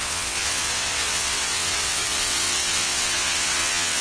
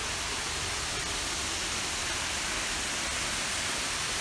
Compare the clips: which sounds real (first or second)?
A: second